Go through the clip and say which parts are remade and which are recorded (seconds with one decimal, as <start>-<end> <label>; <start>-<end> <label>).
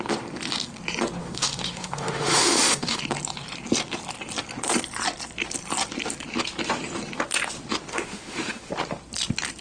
0.0-1.2 recorded; 1.2-3.0 remade; 3.0-7.9 recorded; 7.9-8.7 remade; 8.7-9.6 recorded